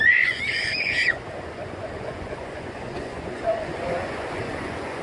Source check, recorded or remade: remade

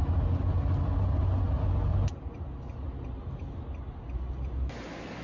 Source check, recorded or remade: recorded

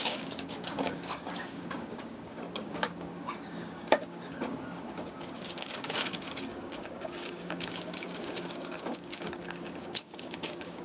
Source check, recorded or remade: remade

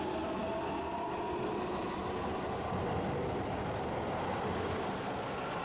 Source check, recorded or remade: recorded